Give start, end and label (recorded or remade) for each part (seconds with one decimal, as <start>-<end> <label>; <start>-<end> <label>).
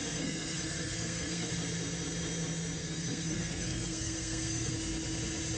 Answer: 0.0-1.5 remade; 1.5-2.8 recorded; 2.8-4.7 remade; 4.7-5.6 recorded